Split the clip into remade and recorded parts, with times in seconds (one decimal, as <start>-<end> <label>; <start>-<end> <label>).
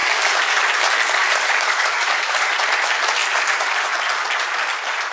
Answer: 0.0-0.6 remade; 0.6-1.2 recorded; 1.2-2.6 remade; 2.6-5.1 recorded